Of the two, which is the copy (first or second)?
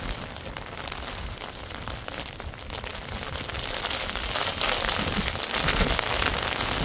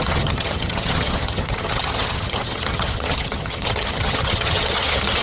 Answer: second